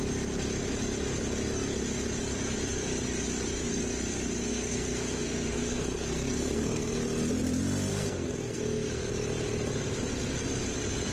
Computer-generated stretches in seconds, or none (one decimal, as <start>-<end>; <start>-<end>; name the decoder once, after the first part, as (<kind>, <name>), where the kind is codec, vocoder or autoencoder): 4.5-7.0 (codec, SNAC); 7.9-9.1